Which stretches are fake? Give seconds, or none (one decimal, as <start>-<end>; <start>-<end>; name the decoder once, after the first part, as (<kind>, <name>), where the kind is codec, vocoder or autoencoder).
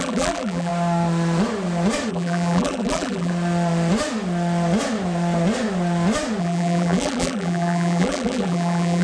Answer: 0.0-0.7 (vocoder, BigVGAN v2); 2.1-3.3; 6.4-9.0